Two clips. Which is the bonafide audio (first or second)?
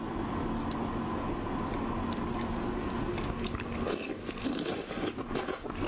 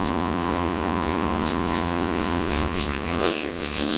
first